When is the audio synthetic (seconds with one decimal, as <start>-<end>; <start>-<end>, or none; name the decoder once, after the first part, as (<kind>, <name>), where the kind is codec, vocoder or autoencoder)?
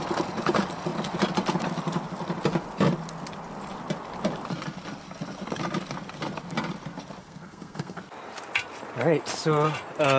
7.2-8.0 (codec, SNAC)